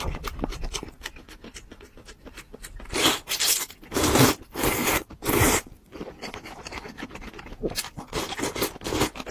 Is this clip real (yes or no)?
yes